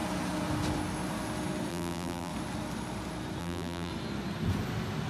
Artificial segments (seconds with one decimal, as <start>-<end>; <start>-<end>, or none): 1.7-2.3; 3.4-3.9